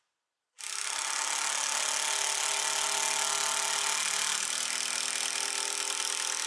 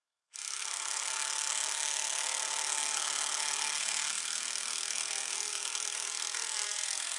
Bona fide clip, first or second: first